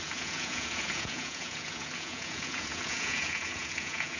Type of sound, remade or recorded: remade